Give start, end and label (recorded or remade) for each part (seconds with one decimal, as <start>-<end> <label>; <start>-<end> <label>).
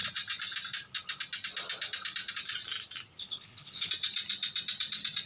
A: 0.0-3.2 recorded; 3.2-3.9 remade; 3.9-5.3 recorded